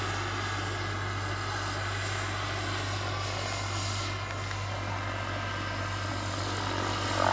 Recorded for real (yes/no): yes